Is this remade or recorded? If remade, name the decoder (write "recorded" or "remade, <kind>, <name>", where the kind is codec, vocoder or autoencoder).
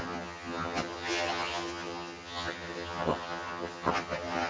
remade, vocoder, HiFi-GAN